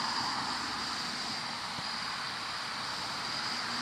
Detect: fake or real real